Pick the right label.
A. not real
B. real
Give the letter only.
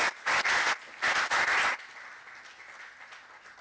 B